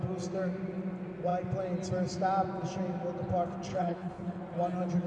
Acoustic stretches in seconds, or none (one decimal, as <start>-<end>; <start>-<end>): 0.0-3.7; 4.4-5.1